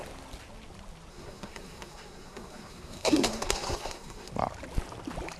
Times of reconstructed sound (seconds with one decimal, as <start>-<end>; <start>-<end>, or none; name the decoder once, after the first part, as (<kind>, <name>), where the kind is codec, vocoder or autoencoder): 1.1-4.3 (codec, SNAC)